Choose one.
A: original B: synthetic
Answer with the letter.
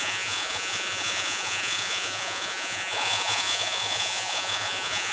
B